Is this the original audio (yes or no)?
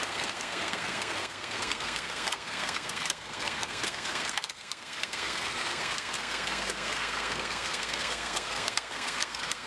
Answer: no